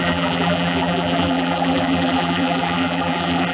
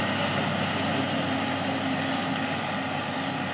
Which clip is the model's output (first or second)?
first